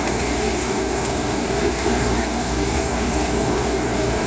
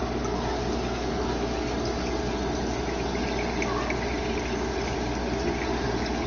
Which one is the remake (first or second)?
first